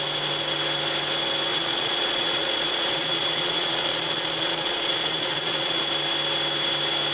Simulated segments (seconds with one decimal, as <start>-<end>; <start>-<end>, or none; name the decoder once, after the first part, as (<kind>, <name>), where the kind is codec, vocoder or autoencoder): 1.5-5.8 (vocoder, Vocos)